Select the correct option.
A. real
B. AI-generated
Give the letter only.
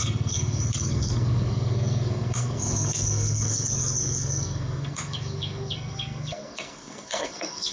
B